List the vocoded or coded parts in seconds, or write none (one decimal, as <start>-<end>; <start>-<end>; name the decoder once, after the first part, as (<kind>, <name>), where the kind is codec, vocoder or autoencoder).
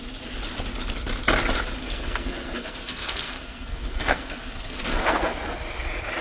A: 1.8-5.3 (codec, SNAC)